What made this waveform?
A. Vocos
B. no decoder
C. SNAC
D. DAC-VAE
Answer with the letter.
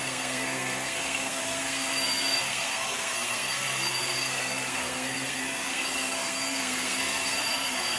C